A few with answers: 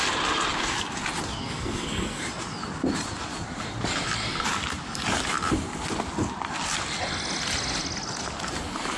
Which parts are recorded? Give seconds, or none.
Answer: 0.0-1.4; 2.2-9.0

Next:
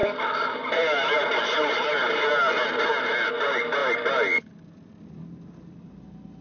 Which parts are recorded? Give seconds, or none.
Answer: 0.0-6.4

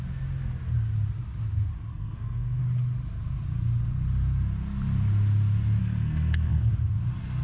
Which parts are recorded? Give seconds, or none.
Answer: 0.0-1.9; 2.6-5.8; 6.7-7.4